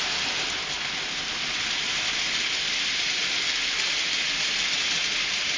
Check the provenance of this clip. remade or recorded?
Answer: recorded